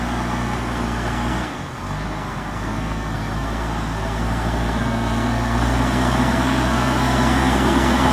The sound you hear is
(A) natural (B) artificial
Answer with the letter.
B